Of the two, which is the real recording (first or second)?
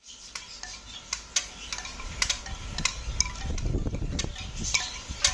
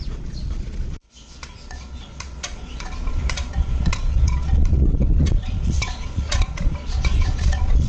first